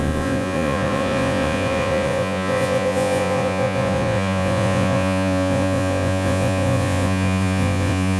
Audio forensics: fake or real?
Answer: fake